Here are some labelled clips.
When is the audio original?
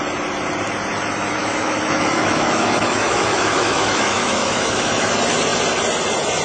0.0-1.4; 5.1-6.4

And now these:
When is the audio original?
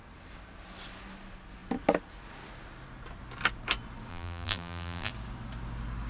0.0-4.1; 5.1-6.1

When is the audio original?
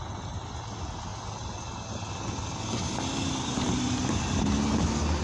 0.0-5.2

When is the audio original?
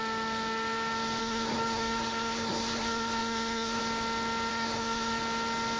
0.0-1.2; 3.8-4.5; 5.2-5.8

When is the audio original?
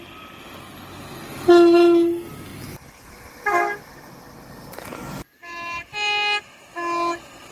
0.0-7.5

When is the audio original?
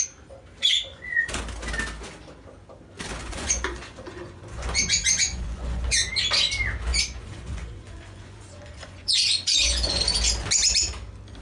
0.0-0.9; 1.4-3.2; 6.1-6.9; 10.0-11.4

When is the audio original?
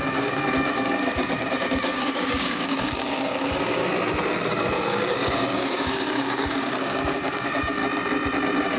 3.8-4.5; 7.8-8.8